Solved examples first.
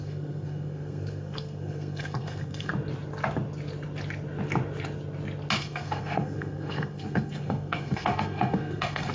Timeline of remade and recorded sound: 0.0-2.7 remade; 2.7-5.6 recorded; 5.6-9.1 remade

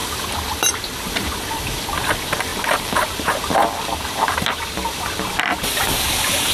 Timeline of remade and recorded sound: 0.0-6.5 recorded

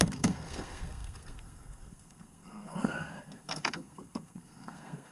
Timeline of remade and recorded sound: 0.0-5.1 remade

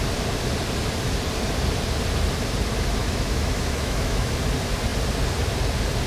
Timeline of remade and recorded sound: 0.0-3.0 recorded; 3.0-4.3 remade; 4.3-6.1 recorded